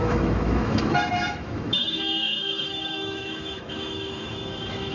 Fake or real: fake